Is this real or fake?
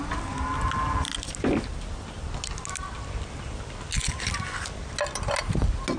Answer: real